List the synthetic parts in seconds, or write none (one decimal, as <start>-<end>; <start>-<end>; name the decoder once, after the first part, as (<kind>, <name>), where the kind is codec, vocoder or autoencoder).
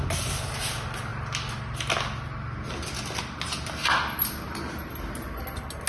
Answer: none